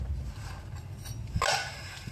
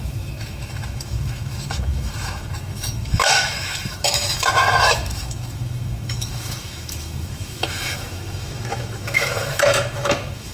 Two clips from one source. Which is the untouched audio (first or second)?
first